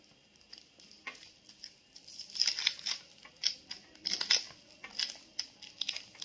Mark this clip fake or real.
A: real